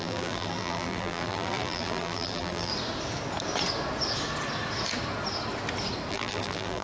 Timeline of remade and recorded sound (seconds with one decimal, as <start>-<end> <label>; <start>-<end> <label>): 0.0-2.7 remade; 2.7-6.1 recorded; 6.1-6.8 remade

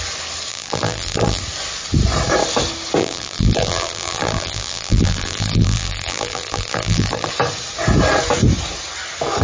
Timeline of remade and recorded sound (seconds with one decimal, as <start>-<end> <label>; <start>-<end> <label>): 0.0-0.5 recorded; 0.5-1.4 remade; 1.4-3.0 recorded; 3.0-7.3 remade; 7.3-9.4 recorded